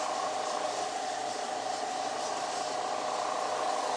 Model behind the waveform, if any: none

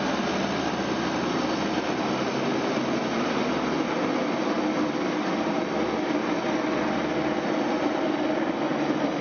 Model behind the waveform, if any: none